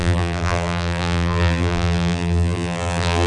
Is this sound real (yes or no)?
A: no